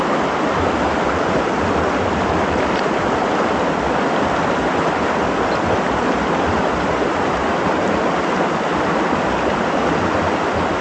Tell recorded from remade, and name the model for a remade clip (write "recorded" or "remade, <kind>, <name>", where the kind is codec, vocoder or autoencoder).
recorded